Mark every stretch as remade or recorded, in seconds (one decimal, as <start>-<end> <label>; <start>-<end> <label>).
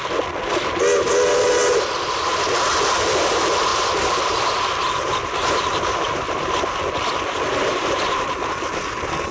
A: 0.0-3.7 recorded; 3.7-4.2 remade; 4.2-4.8 recorded; 4.8-6.6 remade; 6.6-7.7 recorded; 7.7-8.7 remade; 8.7-9.3 recorded